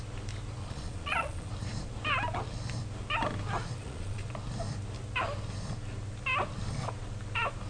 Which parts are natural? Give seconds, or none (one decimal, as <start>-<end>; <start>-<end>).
0.0-0.6; 1.5-3.8; 4.3-7.7